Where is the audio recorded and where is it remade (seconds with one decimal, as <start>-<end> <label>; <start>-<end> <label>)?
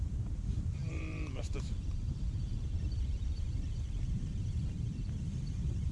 0.0-5.9 remade